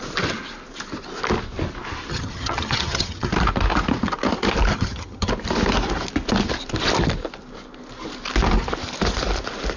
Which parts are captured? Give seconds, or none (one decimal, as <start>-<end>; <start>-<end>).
0.0-2.1; 3.3-4.7; 5.3-9.8